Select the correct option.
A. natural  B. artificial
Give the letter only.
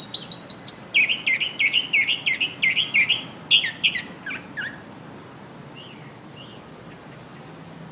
A